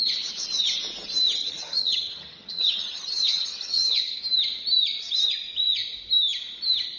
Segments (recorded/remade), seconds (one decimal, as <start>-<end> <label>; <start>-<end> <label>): 0.0-1.4 recorded; 1.4-4.2 remade; 4.2-7.0 recorded